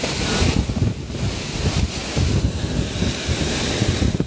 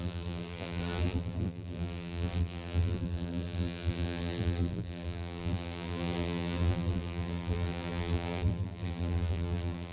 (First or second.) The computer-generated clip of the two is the second